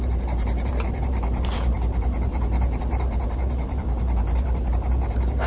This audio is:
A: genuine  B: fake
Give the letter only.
B